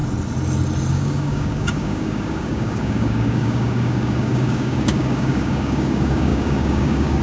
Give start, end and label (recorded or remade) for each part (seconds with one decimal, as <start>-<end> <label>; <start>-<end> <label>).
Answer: 0.0-0.9 recorded; 0.9-7.2 remade

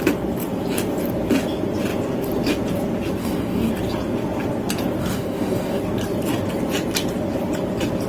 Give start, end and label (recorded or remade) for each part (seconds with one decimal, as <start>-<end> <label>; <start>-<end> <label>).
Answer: 0.0-3.2 recorded; 3.2-3.7 remade; 3.7-5.0 recorded; 5.0-5.8 remade; 5.8-8.1 recorded